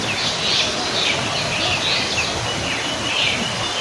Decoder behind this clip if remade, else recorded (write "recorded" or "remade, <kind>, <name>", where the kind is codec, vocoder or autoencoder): recorded